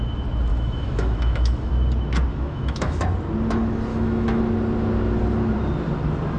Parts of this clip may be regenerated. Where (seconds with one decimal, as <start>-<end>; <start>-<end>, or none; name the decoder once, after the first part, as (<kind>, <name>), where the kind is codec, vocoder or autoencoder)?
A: 0.5-1.7 (autoencoder, DAC-VAE); 2.3-3.0; 3.9-4.4